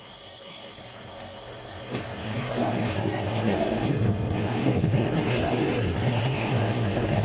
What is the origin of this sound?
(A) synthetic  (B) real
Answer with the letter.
A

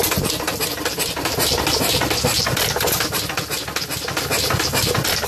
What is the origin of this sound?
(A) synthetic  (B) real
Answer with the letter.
B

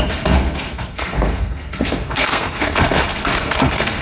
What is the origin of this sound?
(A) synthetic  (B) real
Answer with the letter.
A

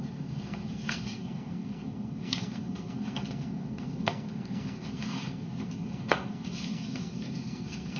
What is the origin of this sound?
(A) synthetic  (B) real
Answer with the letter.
A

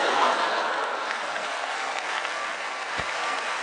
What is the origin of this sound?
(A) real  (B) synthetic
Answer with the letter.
B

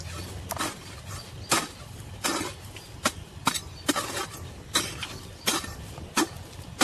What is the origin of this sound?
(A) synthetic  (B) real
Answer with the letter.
B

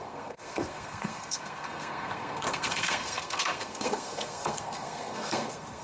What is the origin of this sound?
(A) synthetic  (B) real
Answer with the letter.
A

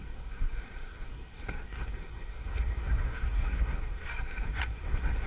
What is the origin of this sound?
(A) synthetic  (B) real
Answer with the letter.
A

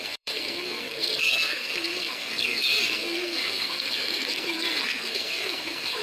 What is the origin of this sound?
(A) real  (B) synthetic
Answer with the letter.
B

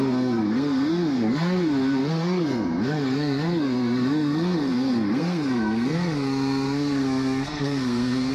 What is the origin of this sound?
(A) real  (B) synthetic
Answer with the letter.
B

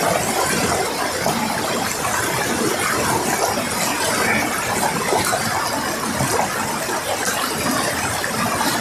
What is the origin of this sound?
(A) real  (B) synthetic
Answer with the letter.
A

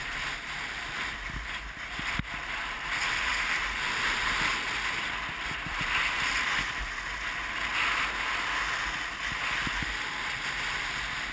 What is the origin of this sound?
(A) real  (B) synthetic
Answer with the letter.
A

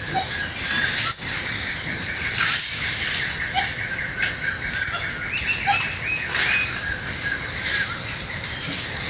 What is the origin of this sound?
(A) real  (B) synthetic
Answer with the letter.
A